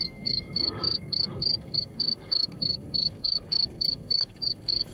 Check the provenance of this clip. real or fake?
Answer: fake